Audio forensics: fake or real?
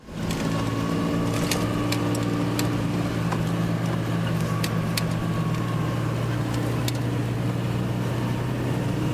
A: real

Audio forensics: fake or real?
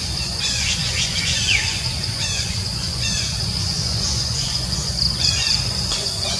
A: fake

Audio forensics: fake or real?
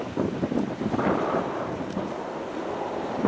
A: real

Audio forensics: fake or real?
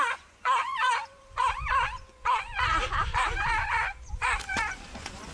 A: fake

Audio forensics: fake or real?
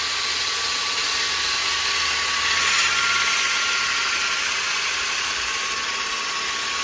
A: real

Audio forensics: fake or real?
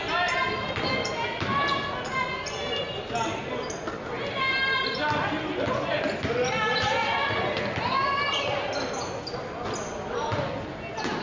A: real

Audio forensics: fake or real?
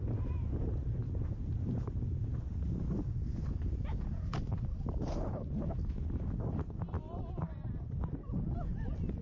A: real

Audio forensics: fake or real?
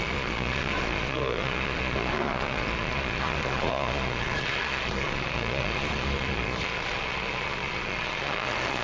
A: fake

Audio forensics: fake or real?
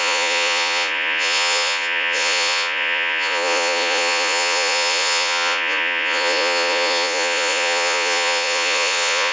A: fake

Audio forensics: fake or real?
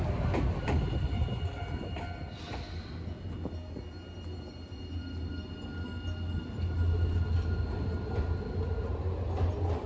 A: real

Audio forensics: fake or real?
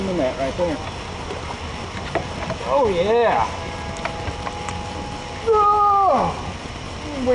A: real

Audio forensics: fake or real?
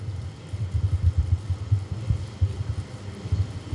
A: real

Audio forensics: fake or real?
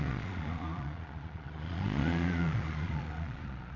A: fake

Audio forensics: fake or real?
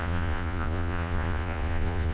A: fake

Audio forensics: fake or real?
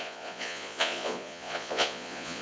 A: fake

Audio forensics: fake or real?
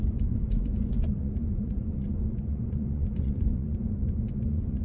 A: fake